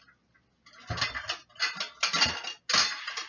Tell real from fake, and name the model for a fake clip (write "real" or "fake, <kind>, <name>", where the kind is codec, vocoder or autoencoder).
real